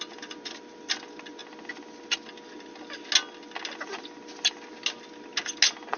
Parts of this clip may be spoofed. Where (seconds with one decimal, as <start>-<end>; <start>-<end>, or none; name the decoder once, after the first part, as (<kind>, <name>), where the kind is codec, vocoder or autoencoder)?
none